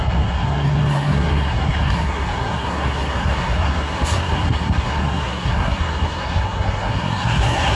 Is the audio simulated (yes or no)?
yes